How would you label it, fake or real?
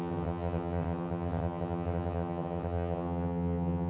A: fake